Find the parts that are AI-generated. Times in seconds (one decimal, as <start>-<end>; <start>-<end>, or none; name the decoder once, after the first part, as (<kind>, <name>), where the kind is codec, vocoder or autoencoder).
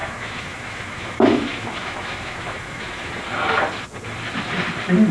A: 0.0-3.1 (autoencoder, DAC-VAE)